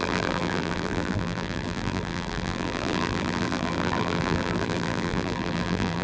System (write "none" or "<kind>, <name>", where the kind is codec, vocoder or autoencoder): vocoder, BigVGAN v2